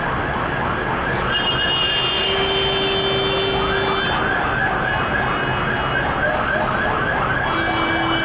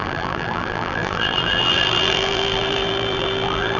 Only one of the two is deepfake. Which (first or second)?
second